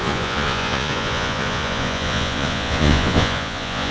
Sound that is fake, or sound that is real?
fake